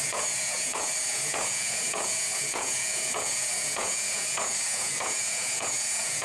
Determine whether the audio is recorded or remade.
remade